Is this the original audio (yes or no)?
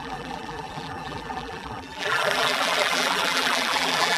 no